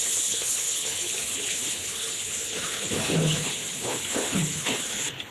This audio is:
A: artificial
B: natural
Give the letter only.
A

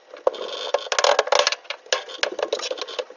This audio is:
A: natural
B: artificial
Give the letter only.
A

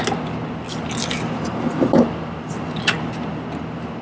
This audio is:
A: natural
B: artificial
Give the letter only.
A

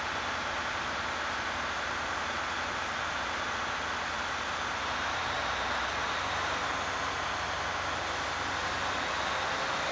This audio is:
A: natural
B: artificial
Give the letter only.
A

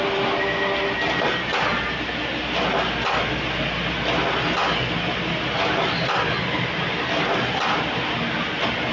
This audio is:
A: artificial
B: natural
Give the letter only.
B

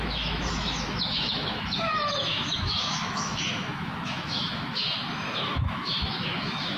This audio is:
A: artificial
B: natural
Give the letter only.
A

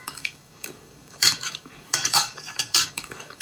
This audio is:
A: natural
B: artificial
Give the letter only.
B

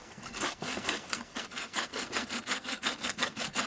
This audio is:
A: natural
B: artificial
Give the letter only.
B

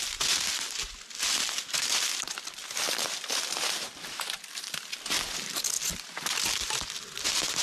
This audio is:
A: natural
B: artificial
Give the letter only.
A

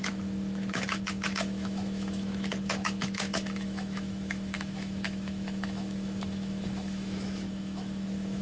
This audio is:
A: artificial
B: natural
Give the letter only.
A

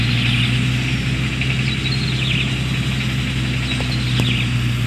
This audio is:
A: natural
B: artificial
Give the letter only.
A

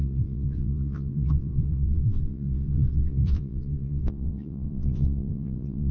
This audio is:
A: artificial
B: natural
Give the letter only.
A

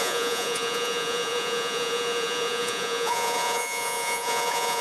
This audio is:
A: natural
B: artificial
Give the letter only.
B